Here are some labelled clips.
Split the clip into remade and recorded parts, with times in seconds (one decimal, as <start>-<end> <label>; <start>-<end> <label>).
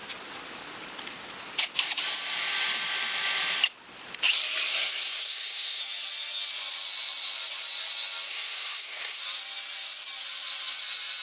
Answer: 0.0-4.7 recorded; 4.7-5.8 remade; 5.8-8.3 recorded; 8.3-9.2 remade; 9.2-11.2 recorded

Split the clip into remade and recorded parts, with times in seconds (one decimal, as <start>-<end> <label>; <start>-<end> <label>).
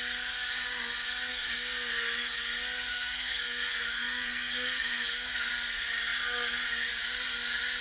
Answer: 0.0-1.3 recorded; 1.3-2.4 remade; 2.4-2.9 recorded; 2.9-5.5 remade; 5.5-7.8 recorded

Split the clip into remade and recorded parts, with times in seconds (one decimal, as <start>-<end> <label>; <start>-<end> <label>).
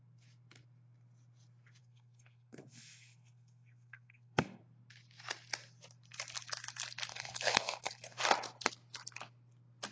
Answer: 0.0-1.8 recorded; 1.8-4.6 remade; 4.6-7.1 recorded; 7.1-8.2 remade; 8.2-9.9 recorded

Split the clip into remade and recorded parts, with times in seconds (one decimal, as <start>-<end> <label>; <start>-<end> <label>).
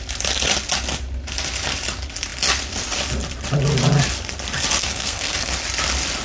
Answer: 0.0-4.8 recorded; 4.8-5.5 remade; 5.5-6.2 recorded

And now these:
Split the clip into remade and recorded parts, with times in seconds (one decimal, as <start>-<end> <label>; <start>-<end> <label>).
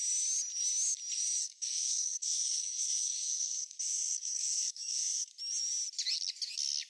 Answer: 0.0-1.4 recorded; 1.4-5.3 remade; 5.3-6.9 recorded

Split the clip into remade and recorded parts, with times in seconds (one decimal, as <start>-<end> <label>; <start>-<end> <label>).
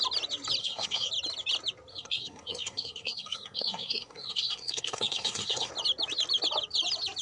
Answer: 0.0-0.6 recorded; 0.6-1.1 remade; 1.1-1.9 recorded; 1.9-5.7 remade; 5.7-7.2 recorded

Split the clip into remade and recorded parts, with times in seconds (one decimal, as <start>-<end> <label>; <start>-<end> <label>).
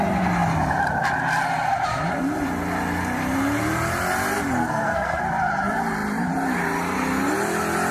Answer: 0.0-4.6 recorded; 4.6-5.2 remade; 5.2-7.9 recorded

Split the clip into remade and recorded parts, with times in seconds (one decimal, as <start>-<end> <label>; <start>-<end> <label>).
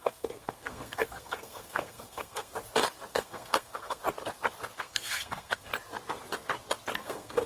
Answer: 0.0-2.5 remade; 2.5-3.1 recorded; 3.1-4.0 remade; 4.0-4.8 recorded; 4.8-5.7 remade; 5.7-7.0 recorded; 7.0-7.5 remade